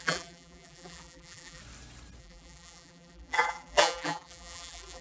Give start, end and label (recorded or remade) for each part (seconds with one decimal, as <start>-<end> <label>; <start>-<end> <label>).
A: 0.0-1.6 remade; 1.6-2.2 recorded; 2.2-5.0 remade